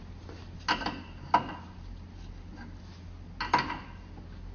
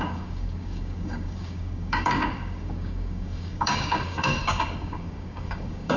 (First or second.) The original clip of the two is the first